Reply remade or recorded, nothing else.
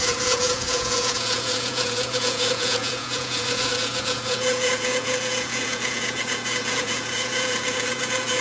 remade